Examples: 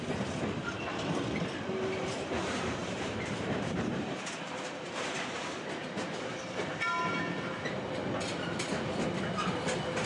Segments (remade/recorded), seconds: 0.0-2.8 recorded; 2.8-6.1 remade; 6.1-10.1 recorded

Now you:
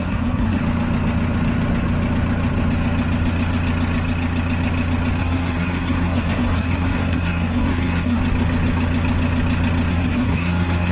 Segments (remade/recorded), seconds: 0.0-0.6 remade; 0.6-5.2 recorded; 5.2-8.2 remade; 8.2-9.9 recorded; 9.9-10.9 remade

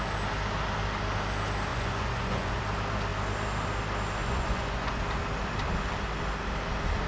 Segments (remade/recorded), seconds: 0.0-1.7 recorded; 1.7-2.6 remade; 2.6-4.2 recorded; 4.2-5.0 remade; 5.0-7.1 recorded